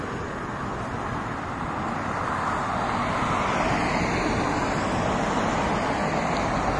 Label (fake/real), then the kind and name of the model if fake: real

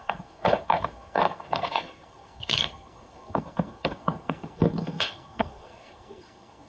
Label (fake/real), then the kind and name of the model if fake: fake, codec, SNAC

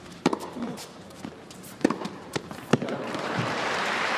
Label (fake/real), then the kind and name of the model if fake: fake, vocoder, BigVGAN v2